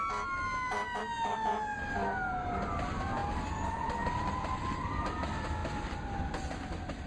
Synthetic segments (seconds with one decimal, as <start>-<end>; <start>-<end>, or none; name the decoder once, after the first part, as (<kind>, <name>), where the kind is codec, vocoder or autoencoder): none

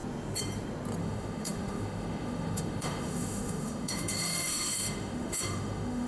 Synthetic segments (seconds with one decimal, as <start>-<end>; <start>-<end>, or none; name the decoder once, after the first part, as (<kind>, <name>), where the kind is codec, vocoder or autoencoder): 1.0-6.1 (autoencoder, DAC-VAE)

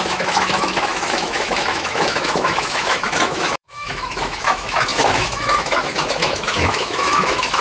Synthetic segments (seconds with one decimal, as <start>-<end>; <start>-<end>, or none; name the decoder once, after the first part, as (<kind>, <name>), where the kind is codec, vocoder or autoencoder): 0.0-7.6 (autoencoder, DAC-VAE)

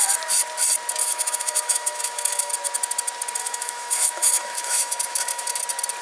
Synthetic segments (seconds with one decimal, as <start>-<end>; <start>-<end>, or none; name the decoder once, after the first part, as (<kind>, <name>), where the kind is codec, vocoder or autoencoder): 1.0-2.5 (autoencoder, DAC-VAE); 3.4-5.6

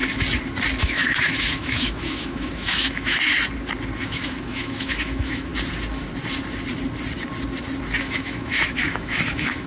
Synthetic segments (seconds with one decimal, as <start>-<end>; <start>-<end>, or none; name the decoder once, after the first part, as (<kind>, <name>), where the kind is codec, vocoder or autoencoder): 0.8-3.3 (autoencoder, DAC-VAE); 4.0-5.5; 8.0-9.7

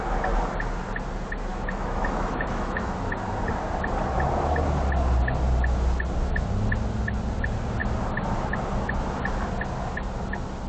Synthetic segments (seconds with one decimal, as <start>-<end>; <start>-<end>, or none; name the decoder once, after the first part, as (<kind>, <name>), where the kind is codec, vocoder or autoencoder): 1.5-2.9 (autoencoder, DAC-VAE)

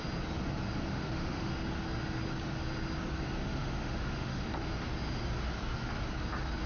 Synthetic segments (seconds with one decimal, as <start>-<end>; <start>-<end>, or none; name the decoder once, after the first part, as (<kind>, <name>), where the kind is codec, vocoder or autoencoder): 0.9-1.5 (autoencoder, DAC-VAE); 3.4-4.4